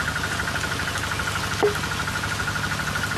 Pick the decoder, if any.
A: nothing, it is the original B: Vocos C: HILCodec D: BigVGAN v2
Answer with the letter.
A